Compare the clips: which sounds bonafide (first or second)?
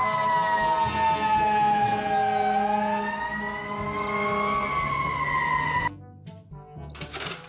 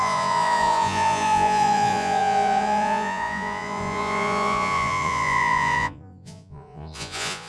first